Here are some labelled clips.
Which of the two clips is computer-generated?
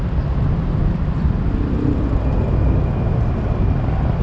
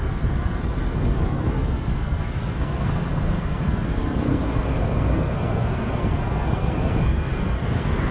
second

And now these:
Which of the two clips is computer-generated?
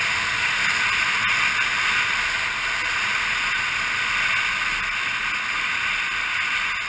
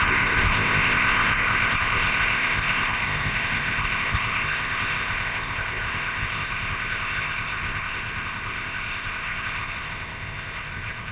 second